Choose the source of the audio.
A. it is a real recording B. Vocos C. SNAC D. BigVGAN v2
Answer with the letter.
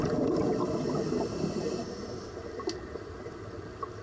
A